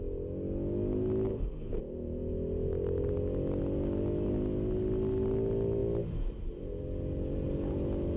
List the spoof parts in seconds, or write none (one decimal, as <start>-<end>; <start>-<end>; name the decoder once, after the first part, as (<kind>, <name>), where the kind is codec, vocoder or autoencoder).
1.3-1.8 (codec, SNAC)